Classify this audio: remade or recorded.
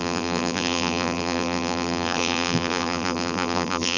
remade